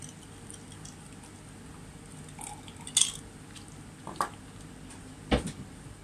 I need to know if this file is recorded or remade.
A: recorded